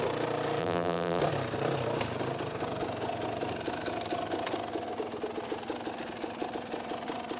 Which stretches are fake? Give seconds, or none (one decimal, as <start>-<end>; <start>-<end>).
0.6-1.2